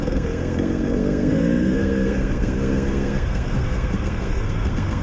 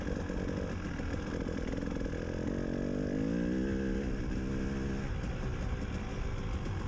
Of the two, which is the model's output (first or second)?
first